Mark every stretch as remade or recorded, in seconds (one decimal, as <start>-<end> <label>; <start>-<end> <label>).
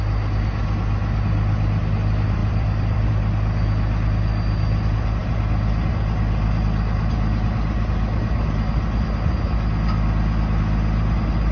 0.0-2.4 recorded; 2.4-3.1 remade; 3.1-11.5 recorded